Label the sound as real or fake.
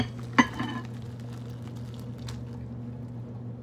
real